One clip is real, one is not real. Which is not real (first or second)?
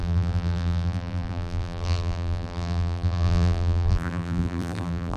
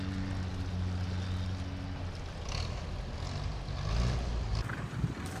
first